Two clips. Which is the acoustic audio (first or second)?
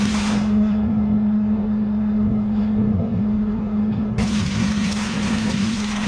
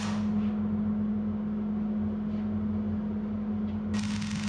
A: second